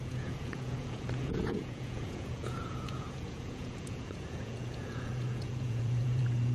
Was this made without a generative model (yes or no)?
no